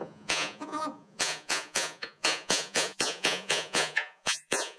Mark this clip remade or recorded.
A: remade